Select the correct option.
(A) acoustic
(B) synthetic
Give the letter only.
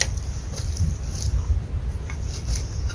A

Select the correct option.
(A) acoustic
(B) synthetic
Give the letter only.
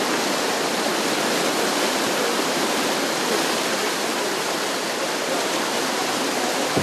A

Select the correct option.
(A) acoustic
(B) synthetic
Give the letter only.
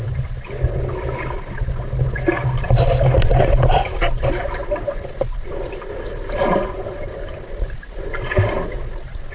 A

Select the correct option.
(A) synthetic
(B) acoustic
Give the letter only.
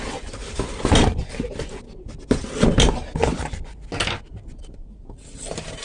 B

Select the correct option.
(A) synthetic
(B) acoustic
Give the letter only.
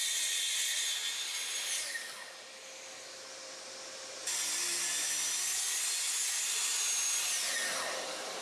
B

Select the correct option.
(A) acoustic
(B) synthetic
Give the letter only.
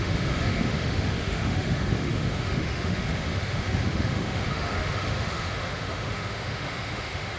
B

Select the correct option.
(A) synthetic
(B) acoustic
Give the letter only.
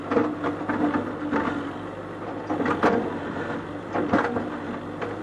B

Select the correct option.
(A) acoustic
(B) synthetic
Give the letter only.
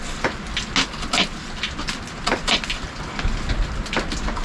A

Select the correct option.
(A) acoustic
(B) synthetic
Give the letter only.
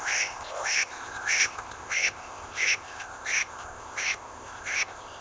B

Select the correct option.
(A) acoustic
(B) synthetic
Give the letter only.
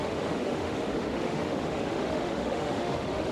B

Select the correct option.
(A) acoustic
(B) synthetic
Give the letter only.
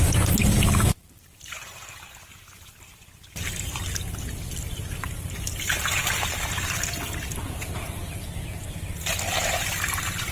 A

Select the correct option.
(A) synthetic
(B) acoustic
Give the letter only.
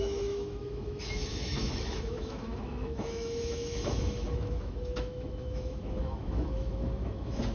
A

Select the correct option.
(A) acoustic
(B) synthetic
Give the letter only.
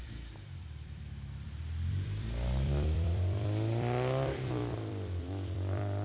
B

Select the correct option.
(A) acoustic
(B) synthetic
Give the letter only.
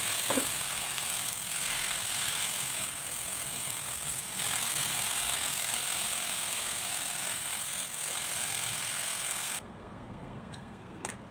B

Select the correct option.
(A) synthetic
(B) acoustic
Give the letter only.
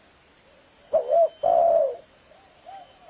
B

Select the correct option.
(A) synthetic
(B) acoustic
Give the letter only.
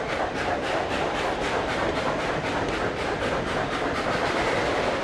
B